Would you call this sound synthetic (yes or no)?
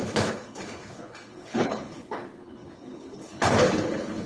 yes